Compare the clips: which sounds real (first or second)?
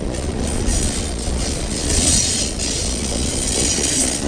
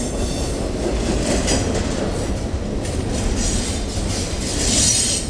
second